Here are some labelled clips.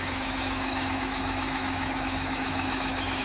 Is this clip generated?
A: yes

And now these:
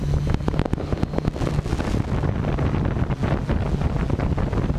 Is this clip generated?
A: no